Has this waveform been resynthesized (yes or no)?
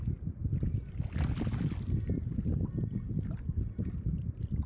no